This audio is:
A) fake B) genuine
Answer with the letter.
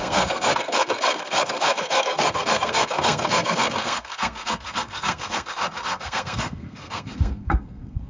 A